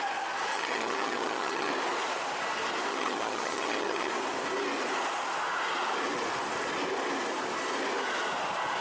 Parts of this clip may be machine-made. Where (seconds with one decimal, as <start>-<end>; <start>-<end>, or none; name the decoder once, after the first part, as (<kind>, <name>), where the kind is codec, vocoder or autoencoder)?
0.5-1.7 (vocoder, HiFi-GAN); 2.9-4.1